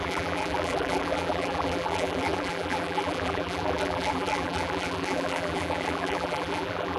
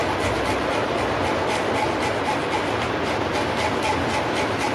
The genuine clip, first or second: second